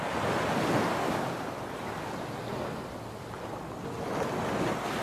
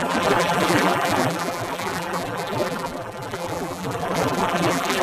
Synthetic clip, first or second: second